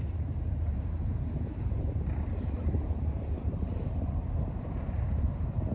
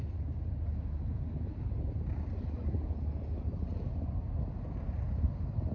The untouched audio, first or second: second